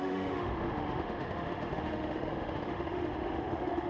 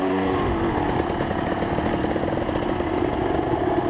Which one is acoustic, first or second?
second